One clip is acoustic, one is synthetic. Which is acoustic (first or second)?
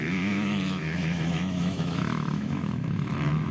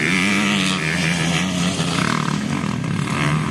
second